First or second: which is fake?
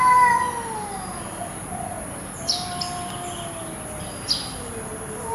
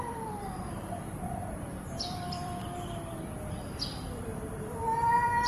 second